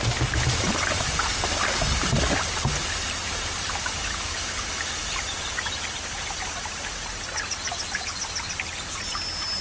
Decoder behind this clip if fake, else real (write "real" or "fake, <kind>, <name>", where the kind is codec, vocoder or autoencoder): real